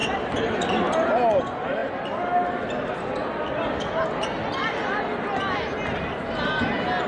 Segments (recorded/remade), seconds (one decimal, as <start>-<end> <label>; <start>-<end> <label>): 0.0-7.1 recorded